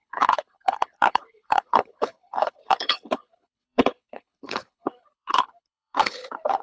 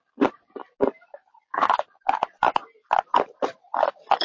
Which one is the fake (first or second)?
first